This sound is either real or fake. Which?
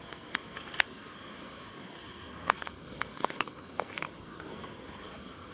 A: fake